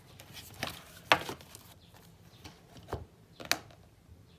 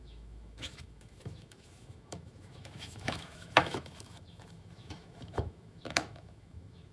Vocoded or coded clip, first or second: second